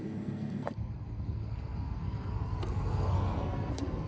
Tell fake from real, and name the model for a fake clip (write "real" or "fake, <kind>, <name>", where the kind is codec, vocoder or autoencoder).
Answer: fake, codec, SNAC